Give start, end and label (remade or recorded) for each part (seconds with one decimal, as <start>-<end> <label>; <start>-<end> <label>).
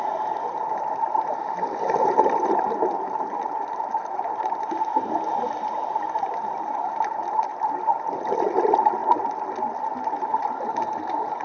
0.0-7.5 remade; 7.5-8.3 recorded; 8.3-9.0 remade; 9.0-9.8 recorded; 9.8-10.3 remade; 10.3-10.9 recorded; 10.9-11.4 remade